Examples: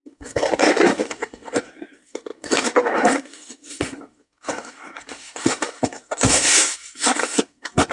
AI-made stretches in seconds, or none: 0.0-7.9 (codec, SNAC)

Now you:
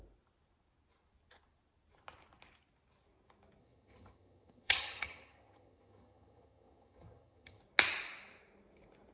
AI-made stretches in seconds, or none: 3.6-7.6 (vocoder, HiFi-GAN)

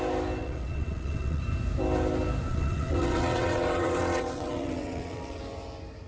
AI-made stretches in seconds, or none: 0.4-1.4 (vocoder, WaveNeXt); 2.5-5.4

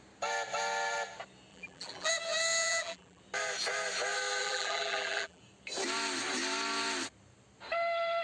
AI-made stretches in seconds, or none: 1.5-2.1 (vocoder, BigVGAN v2); 2.6-3.2; 4.4-5.4

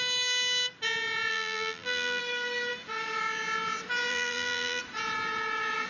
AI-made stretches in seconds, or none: 1.3-2.2 (vocoder, BigVGAN v2); 4.1-4.8

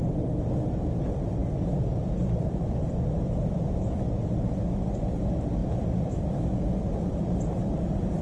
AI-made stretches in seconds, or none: 1.4-4.5 (vocoder, BigVGAN v2); 5.6-8.2